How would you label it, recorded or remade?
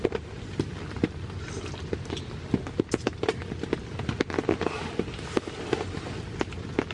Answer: recorded